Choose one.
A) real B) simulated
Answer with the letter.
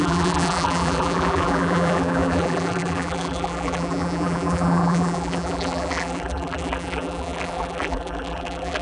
B